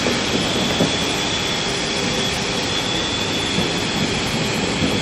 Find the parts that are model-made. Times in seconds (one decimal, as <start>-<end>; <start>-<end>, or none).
none

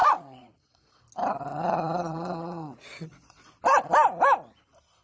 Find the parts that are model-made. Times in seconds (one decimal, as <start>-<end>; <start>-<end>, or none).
0.0-1.0; 1.5-3.5

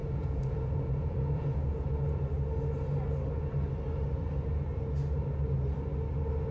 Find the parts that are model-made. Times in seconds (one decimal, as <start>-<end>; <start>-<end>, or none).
0.0-2.2

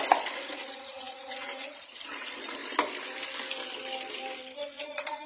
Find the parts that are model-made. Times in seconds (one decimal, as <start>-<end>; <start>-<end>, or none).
0.0-2.6; 4.6-5.3

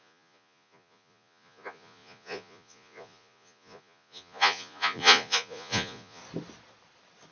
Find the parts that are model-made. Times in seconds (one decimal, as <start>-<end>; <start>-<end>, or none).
0.0-6.2

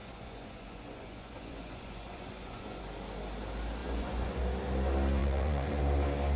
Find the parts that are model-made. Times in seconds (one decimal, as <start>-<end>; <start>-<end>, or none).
0.0-2.8; 3.8-4.4; 5.2-5.8

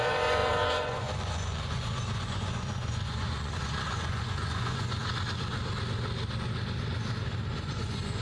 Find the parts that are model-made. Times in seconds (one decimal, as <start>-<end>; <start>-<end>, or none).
0.0-5.0; 7.6-8.2